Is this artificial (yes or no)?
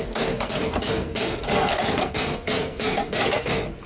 yes